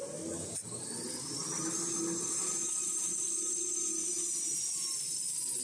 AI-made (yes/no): no